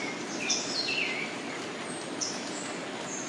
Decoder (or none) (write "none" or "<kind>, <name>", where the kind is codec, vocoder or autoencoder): none